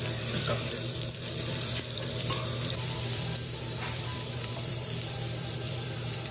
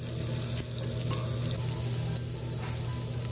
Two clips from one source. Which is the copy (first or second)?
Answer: first